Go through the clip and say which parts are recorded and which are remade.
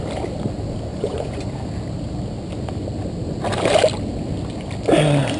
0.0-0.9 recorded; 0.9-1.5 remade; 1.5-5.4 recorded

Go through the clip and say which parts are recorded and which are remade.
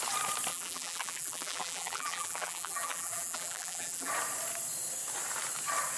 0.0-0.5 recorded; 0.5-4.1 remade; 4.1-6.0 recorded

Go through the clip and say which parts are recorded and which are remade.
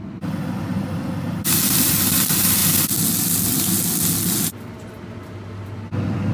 0.0-6.3 recorded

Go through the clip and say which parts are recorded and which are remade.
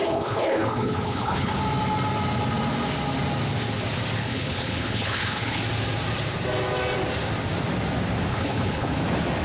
0.0-1.6 remade; 1.6-4.2 recorded; 4.2-5.6 remade; 5.6-8.3 recorded; 8.3-9.0 remade; 9.0-9.4 recorded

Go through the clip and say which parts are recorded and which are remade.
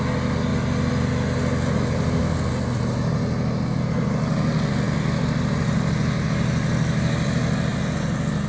0.0-8.5 recorded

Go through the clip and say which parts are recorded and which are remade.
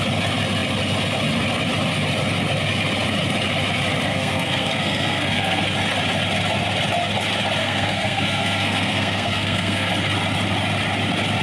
0.0-4.1 recorded; 4.1-5.6 remade; 5.6-7.6 recorded; 7.6-9.9 remade; 9.9-11.4 recorded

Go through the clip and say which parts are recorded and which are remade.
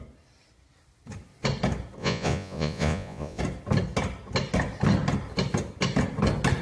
0.0-2.0 recorded; 2.0-3.4 remade; 3.4-6.6 recorded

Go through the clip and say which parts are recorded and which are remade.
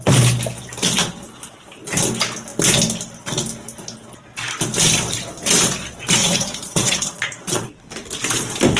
0.0-6.2 recorded; 6.2-7.8 remade; 7.8-8.8 recorded